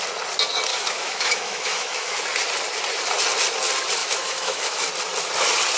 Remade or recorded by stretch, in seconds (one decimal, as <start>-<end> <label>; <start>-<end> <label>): 0.0-0.7 recorded; 0.7-2.2 remade; 2.2-4.0 recorded; 4.0-4.9 remade; 4.9-5.8 recorded